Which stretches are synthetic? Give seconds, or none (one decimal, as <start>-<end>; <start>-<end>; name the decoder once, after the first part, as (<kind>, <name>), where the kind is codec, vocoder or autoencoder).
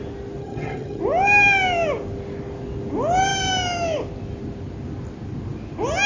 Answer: 0.4-1.0 (vocoder, HiFi-GAN)